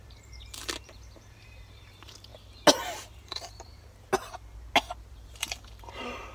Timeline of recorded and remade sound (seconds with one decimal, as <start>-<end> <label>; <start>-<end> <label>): 0.0-2.3 remade; 2.3-3.1 recorded; 3.1-4.1 remade; 4.1-5.1 recorded; 5.1-6.3 remade